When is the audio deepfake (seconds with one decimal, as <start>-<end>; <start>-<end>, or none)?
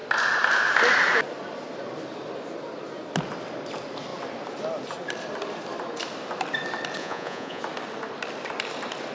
7.0-7.6